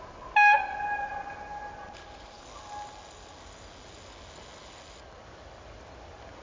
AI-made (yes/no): no